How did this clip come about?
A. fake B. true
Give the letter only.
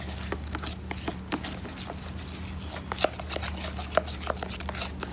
B